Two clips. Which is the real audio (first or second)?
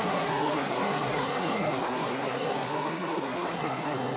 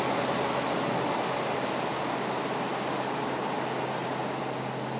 second